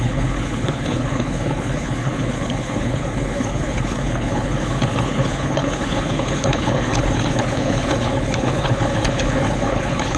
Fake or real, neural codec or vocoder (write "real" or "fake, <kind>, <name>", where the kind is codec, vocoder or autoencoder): fake, codec, HILCodec